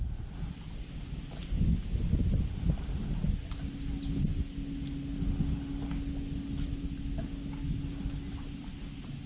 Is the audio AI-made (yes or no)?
no